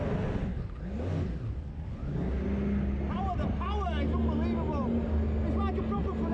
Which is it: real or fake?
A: real